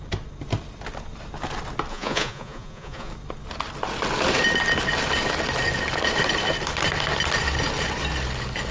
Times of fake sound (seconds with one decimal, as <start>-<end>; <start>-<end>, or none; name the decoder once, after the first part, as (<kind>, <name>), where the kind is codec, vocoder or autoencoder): 1.9-3.1 (vocoder, Vocos)